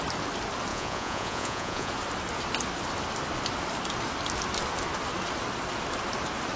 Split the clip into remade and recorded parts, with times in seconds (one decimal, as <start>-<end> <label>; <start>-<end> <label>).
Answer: 0.0-0.7 recorded; 0.7-1.9 remade; 1.9-6.6 recorded